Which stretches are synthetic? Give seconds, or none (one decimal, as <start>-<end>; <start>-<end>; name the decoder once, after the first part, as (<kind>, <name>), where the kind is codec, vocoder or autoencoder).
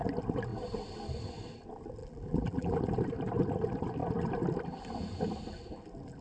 2.0-2.8 (vocoder, BigVGAN v2)